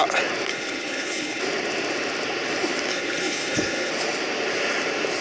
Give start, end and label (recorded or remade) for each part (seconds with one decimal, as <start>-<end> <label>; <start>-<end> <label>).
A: 0.0-0.5 recorded; 0.5-1.4 remade; 1.4-2.9 recorded; 2.9-3.9 remade; 3.9-5.2 recorded